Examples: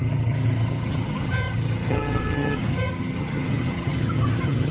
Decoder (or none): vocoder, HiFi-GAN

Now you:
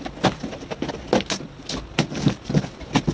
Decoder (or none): none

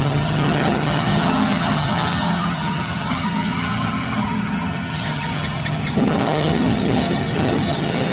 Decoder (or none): vocoder, HiFi-GAN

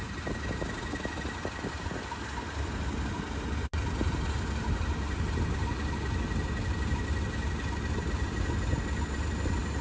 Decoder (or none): none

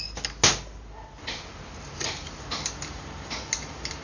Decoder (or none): none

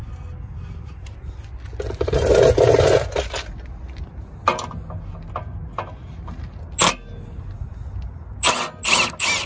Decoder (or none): none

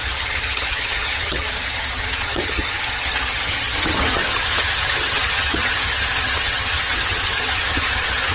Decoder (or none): vocoder, HiFi-GAN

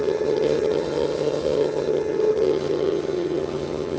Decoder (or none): vocoder, HiFi-GAN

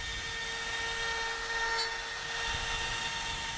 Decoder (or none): none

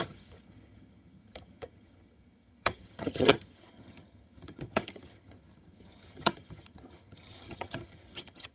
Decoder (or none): vocoder, HiFi-GAN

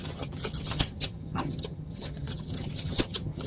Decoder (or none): vocoder, HiFi-GAN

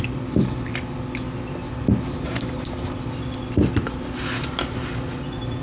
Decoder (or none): none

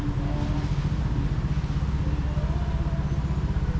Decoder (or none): none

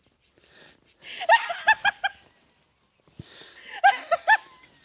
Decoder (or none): none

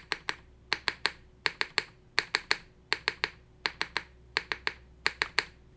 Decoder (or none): none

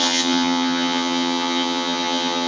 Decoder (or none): vocoder, HiFi-GAN